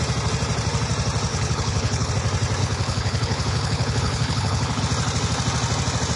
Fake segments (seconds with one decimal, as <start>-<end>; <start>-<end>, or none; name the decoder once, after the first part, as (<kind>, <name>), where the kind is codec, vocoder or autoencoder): 1.3-2.1 (codec, HILCodec); 2.6-4.8